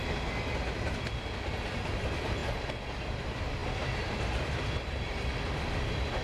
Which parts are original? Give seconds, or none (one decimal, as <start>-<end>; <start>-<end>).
0.0-6.2

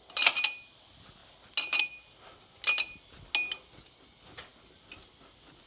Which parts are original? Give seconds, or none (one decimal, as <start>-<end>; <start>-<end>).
0.0-5.7

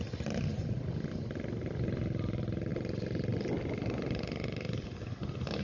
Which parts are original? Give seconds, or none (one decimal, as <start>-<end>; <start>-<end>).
0.0-5.6

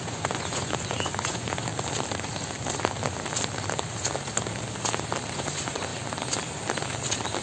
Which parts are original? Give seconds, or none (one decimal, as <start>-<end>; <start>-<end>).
1.7-5.3; 5.9-7.4

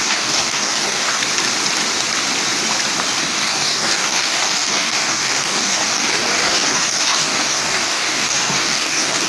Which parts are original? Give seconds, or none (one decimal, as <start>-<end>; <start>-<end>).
1.2-3.2